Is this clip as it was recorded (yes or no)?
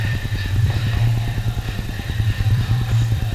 no